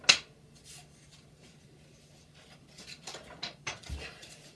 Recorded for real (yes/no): yes